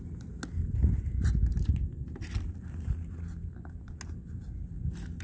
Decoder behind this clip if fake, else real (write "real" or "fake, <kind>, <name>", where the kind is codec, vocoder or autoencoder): real